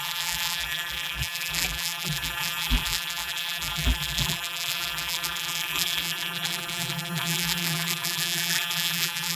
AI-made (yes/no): yes